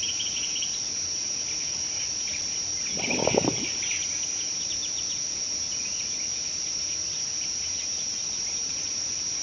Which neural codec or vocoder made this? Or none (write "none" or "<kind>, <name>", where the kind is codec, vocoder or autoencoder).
none